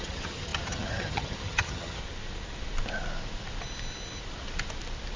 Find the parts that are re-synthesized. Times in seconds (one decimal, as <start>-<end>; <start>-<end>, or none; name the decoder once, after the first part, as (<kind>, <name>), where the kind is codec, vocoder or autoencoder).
0.0-2.0 (vocoder, HiFi-GAN)

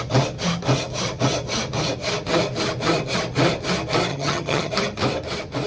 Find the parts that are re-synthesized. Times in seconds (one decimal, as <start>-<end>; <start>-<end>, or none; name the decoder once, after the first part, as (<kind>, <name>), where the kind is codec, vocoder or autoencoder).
4.1-4.7 (vocoder, HiFi-GAN)

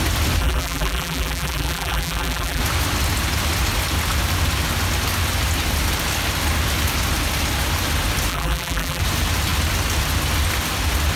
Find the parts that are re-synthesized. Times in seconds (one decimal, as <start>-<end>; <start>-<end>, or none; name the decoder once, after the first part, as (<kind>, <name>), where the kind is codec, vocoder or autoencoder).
0.4-2.6 (vocoder, BigVGAN v2); 8.3-9.0

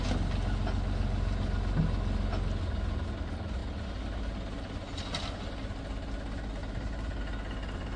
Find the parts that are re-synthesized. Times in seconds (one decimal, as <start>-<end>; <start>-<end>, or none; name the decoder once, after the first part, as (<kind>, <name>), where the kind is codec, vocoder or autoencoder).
6.6-7.2 (vocoder, BigVGAN v2)